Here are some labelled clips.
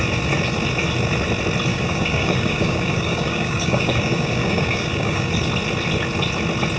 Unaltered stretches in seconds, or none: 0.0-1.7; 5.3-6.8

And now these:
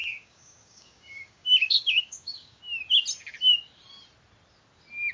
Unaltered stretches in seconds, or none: 2.6-5.1